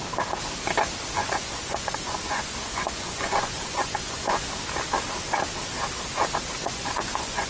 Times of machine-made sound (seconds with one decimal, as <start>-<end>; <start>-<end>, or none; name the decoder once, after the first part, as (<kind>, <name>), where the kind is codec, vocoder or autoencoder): 1.2-4.5 (vocoder, Vocos); 6.6-7.5